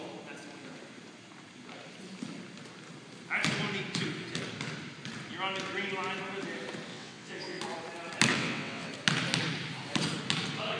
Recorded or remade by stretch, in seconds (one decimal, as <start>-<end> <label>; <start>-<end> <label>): 0.0-6.9 recorded; 6.9-7.6 remade; 7.6-8.3 recorded; 8.3-8.9 remade; 8.9-10.8 recorded